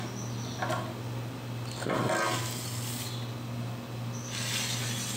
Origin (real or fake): real